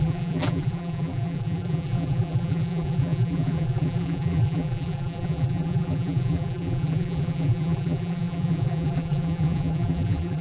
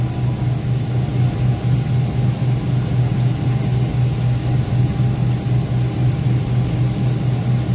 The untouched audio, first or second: second